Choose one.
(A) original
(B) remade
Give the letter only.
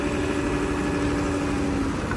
A